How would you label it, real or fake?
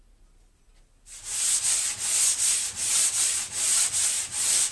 real